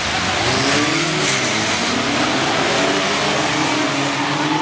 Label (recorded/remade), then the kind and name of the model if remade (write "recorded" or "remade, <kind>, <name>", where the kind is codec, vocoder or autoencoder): recorded